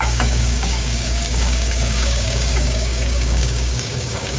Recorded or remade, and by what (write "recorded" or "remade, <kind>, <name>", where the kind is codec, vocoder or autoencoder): remade, codec, DAC